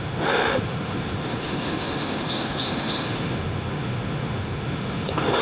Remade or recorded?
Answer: remade